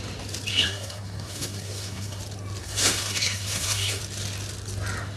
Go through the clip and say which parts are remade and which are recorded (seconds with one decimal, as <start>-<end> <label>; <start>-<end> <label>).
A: 0.0-0.5 recorded; 0.5-2.2 remade; 2.2-2.6 recorded; 2.6-4.0 remade; 4.0-5.2 recorded